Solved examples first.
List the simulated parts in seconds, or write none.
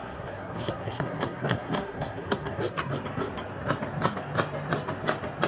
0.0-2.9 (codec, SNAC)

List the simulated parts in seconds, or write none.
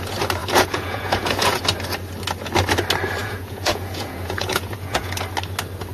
0.4-1.6 (vocoder, Vocos); 3.2-5.1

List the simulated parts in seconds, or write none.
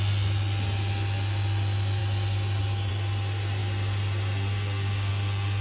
none